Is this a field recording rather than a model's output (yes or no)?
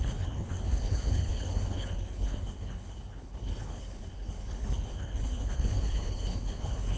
no